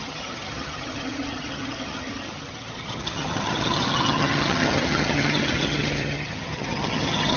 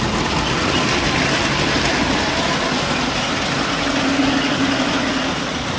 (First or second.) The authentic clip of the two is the second